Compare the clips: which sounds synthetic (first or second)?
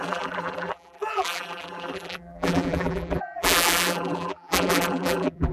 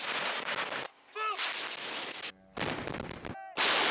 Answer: first